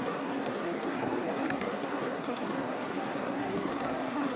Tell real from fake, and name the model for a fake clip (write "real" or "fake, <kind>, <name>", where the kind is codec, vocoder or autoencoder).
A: fake, codec, SNAC